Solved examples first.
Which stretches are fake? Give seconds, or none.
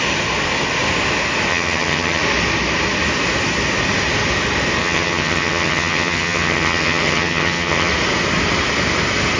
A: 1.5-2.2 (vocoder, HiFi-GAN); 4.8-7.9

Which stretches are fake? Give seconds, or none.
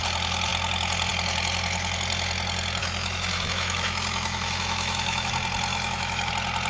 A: 2.8-5.3 (autoencoder, DAC-VAE); 5.7-6.3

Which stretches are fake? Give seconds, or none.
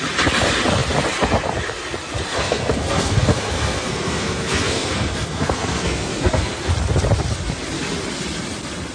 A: 2.3-6.7 (codec, SNAC)